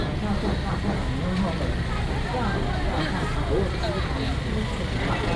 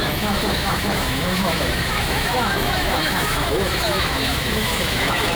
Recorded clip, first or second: first